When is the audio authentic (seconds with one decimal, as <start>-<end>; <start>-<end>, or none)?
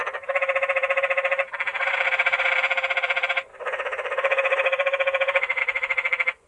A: none